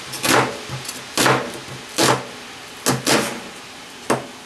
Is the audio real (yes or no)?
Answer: yes